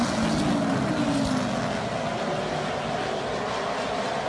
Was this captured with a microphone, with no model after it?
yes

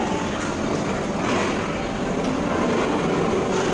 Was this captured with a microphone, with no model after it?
yes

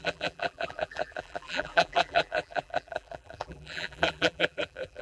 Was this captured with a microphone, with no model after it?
no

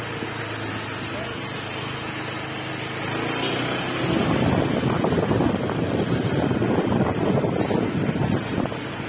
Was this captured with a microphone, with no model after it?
yes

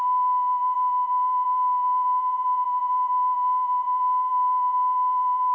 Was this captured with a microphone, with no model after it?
no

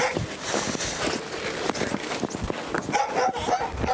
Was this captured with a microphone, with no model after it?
yes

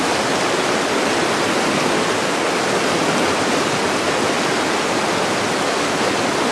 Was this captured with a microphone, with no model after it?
yes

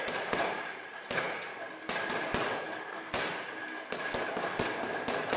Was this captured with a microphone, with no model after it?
yes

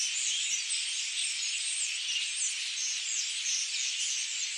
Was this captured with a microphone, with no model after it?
yes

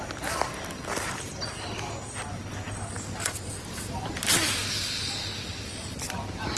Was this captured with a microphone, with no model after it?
yes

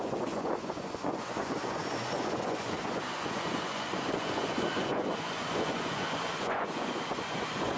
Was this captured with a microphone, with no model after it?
no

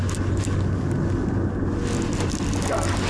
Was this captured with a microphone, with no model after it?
yes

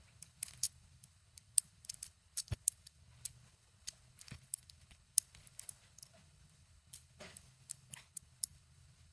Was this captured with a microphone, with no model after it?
no